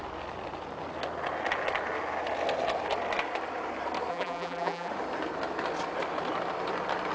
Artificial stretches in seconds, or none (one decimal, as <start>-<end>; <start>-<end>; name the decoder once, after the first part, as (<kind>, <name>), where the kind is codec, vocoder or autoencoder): 4.1-4.9 (vocoder, BigVGAN v2)